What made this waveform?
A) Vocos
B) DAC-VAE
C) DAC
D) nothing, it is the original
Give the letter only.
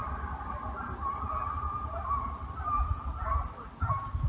D